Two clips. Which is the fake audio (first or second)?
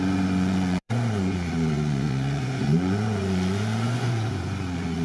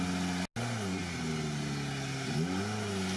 first